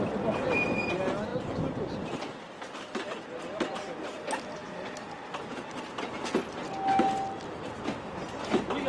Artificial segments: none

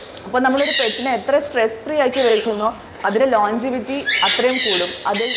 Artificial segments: 2.3-3.2 (codec, HILCodec)

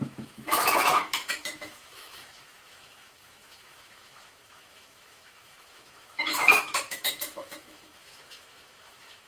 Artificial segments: 0.0-9.3 (autoencoder, DAC-VAE)

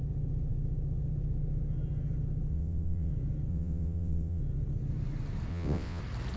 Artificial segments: 2.5-3.1 (vocoder, WaveNeXt); 3.5-4.4; 5.5-6.0

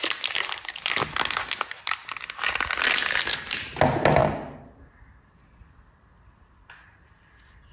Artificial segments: none

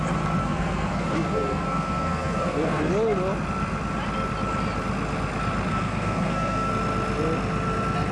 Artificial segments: 0.4-2.9 (codec, SNAC); 5.7-6.7

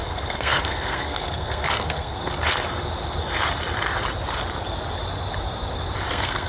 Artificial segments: 0.0-2.2 (codec, SNAC); 6.1-6.5